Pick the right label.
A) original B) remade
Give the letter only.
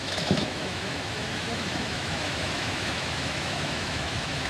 B